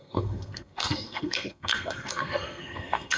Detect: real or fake fake